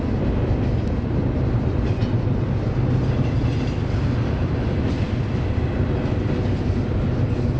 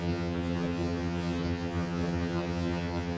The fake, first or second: second